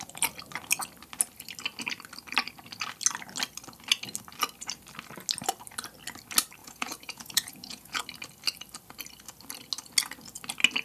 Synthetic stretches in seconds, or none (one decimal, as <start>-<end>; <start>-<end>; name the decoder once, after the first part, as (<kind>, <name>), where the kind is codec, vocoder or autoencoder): 6.6-8.0 (vocoder, Vocos)